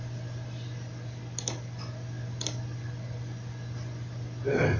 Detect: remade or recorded recorded